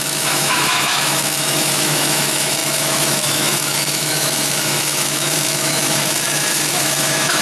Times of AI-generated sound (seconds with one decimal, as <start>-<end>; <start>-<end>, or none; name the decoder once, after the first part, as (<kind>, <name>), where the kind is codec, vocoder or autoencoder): 0.0-7.4 (autoencoder, DAC-VAE)